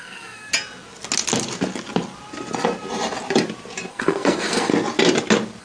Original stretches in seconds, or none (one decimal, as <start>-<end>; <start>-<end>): 0.5-3.9; 4.7-5.6